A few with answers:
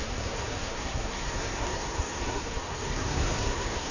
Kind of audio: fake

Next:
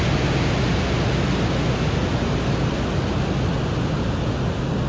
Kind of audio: real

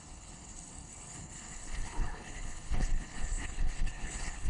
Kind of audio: fake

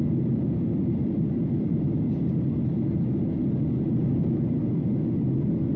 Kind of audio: real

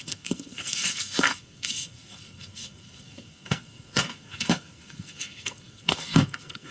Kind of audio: fake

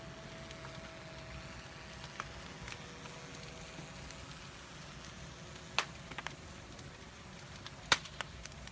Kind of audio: real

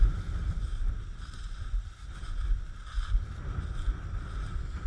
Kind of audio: real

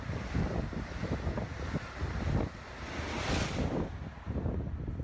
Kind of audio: real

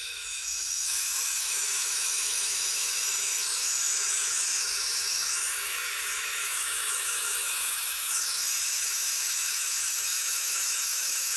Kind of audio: fake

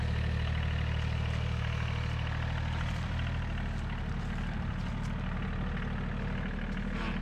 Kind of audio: real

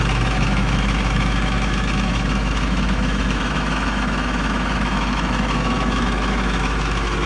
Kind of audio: fake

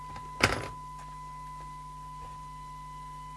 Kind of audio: real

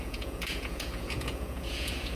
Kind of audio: fake